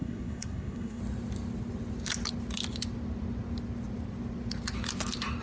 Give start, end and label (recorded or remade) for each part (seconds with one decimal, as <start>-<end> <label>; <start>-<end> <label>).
0.0-1.0 remade; 1.0-5.4 recorded